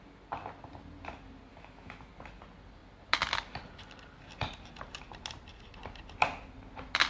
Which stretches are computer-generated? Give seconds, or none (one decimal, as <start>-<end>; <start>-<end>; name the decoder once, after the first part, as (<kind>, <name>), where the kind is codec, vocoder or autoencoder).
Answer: 1.5-2.1 (autoencoder, DAC-VAE)